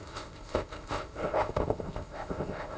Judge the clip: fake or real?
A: fake